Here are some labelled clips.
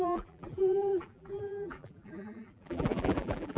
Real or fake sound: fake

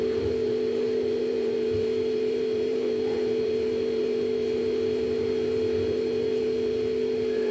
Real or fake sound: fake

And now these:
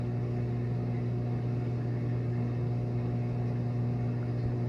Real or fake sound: real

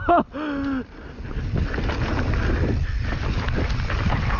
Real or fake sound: real